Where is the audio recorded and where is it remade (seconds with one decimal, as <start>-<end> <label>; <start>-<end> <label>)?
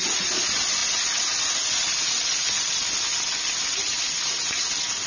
0.0-5.1 recorded